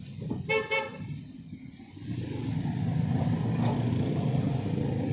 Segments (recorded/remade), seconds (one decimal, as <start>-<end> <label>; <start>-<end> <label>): 0.0-5.1 recorded